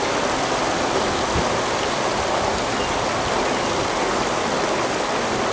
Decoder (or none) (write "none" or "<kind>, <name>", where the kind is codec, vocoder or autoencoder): none